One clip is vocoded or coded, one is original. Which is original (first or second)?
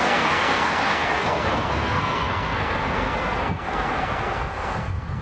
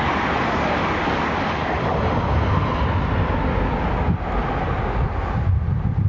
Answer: second